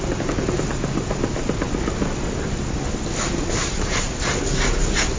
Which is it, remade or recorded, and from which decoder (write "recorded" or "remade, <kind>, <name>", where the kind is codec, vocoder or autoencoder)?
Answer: recorded